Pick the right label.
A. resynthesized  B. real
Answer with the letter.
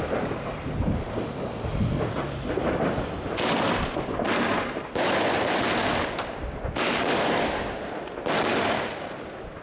B